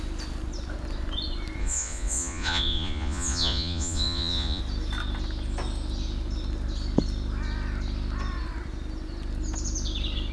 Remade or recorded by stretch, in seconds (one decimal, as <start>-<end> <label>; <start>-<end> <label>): 0.0-1.6 recorded; 1.6-4.6 remade; 4.6-10.3 recorded